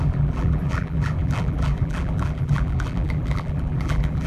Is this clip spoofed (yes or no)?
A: yes